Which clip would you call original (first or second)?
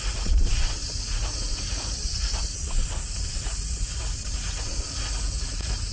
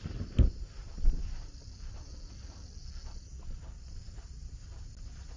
second